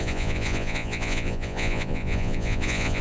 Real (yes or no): no